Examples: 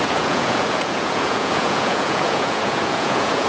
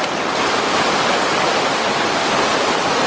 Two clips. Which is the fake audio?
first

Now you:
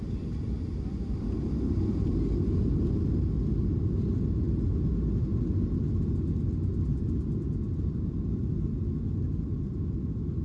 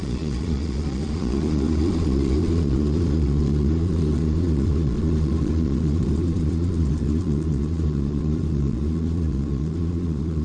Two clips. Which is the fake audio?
second